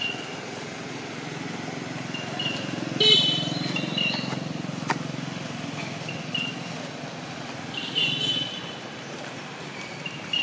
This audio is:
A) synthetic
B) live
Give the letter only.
B